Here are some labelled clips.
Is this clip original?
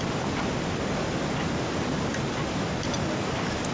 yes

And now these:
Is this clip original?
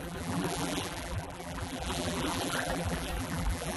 no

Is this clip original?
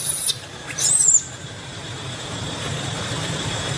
no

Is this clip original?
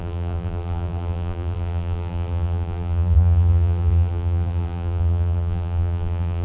no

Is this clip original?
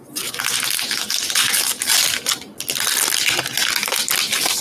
yes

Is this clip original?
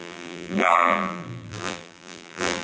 no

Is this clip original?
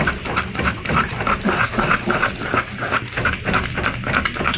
yes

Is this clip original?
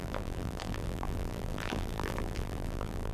no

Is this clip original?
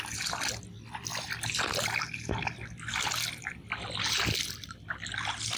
yes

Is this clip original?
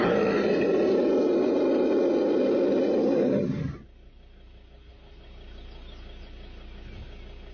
yes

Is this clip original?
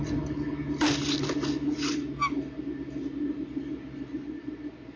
yes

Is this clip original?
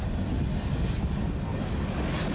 yes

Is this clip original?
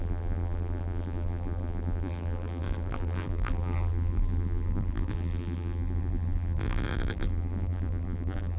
no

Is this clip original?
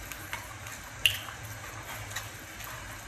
yes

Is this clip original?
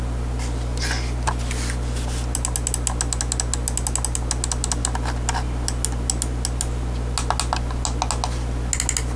yes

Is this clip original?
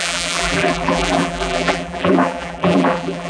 no